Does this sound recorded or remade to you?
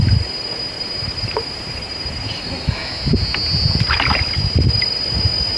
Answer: recorded